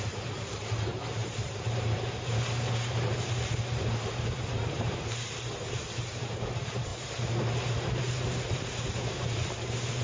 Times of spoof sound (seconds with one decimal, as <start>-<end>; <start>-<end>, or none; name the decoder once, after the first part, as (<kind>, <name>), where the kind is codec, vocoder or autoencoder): 0.0-10.0 (vocoder, BigVGAN v2)